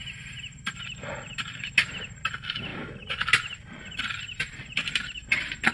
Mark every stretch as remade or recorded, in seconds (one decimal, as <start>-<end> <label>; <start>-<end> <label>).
0.0-5.7 recorded

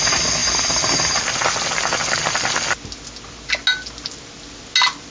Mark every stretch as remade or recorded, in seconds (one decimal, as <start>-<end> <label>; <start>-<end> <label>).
0.0-5.1 recorded